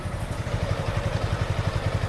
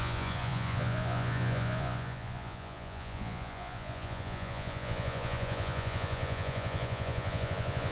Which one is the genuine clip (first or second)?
first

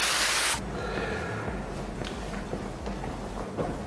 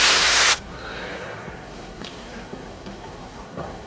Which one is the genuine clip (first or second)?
first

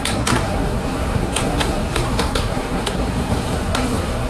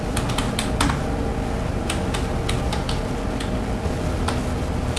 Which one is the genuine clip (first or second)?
second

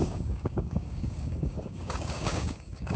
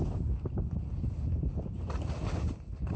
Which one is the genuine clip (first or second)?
second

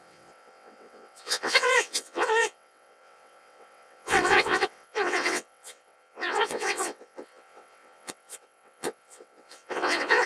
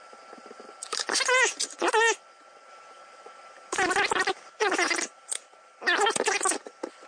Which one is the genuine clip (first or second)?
second